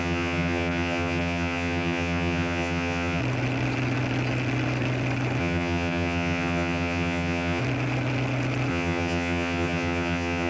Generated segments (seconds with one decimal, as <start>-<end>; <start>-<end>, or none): 0.0-3.2; 5.4-7.6; 8.7-10.5